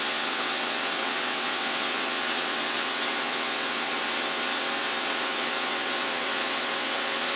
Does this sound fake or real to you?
fake